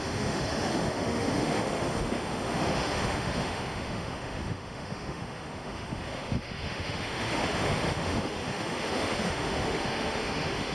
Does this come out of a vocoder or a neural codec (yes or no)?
yes